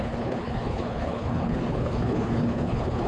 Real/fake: fake